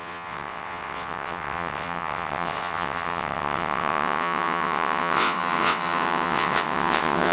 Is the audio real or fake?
fake